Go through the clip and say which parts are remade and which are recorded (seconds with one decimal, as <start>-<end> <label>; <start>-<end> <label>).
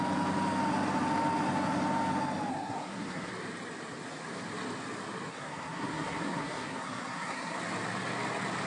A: 0.0-2.5 recorded; 2.5-3.3 remade; 3.3-5.3 recorded; 5.3-7.6 remade; 7.6-8.7 recorded